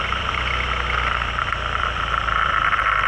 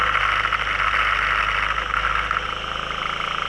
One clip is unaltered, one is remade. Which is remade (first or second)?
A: first